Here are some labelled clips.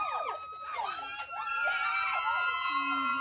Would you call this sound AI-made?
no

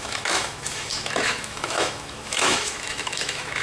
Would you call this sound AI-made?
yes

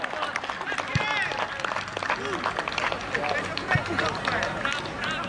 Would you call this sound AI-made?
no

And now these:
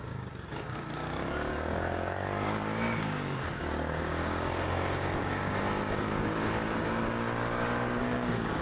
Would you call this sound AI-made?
yes